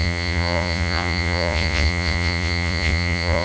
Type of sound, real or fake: fake